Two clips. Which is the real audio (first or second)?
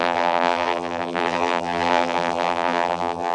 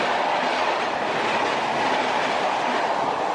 second